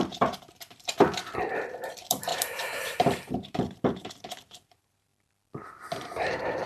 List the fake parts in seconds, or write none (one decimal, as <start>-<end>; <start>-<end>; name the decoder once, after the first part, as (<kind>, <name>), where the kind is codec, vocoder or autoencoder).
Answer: 0.0-5.1 (vocoder, BigVGAN v2); 5.9-6.7